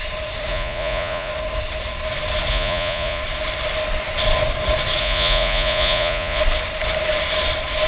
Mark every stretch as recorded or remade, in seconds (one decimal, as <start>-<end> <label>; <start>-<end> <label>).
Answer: 0.0-0.5 recorded; 0.5-1.3 remade; 1.3-2.5 recorded; 2.5-3.2 remade; 3.2-5.0 recorded; 5.0-6.4 remade; 6.4-7.9 recorded